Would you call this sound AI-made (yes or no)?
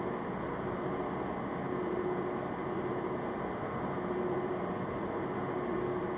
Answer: no